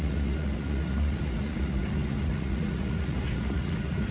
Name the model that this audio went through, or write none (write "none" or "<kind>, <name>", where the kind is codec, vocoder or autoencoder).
vocoder, Vocos